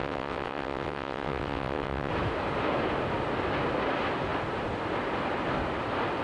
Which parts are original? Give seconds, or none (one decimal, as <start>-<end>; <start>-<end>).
2.1-6.2